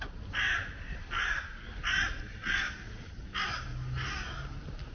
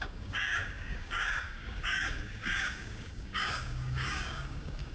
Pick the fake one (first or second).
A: second